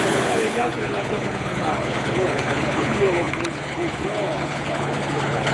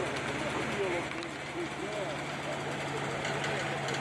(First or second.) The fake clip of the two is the first